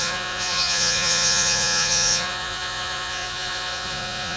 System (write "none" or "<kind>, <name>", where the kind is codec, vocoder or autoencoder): vocoder, Vocos